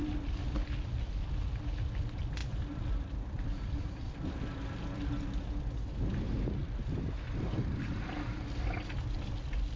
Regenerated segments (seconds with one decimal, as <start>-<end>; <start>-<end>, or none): none